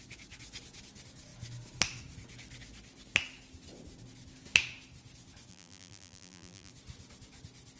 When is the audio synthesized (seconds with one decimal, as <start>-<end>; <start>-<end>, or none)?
5.5-6.7